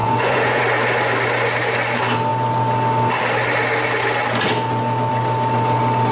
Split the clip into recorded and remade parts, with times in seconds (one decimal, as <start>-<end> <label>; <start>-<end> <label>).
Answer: 0.0-0.6 remade; 0.6-6.1 recorded